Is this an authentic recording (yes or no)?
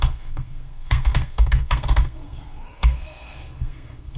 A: no